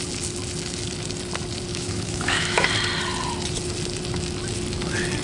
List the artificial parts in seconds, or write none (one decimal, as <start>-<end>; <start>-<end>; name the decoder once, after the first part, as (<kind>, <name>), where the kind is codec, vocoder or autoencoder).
1.7-2.7 (autoencoder, DAC-VAE)